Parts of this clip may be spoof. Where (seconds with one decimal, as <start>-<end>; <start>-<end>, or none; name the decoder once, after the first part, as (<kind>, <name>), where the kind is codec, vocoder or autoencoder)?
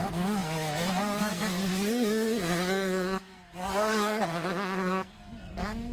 0.0-5.9 (codec, SNAC)